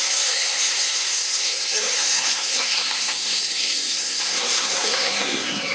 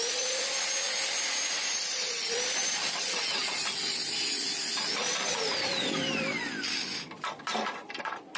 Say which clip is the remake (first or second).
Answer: first